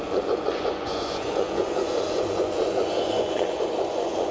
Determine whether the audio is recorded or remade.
remade